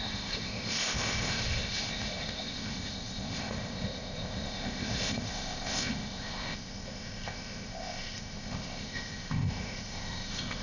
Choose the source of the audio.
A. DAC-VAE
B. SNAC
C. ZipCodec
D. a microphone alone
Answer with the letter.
C